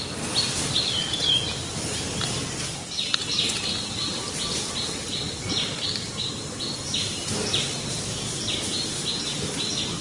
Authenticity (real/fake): real